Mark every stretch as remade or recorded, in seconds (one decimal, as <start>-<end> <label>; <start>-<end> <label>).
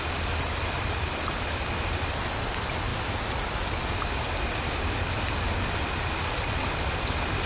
0.0-7.5 recorded